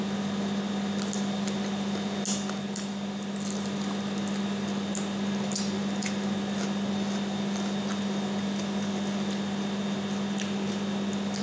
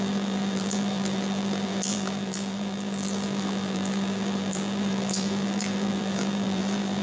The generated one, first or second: second